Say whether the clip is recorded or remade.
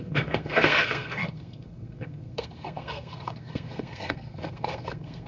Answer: remade